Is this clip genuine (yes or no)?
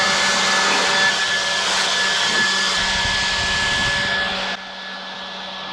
yes